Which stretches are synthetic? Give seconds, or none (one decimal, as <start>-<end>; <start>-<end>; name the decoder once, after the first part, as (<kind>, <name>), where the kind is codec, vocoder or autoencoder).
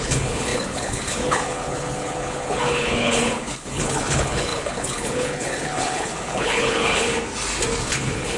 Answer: 0.0-7.1 (codec, HILCodec); 7.8-8.4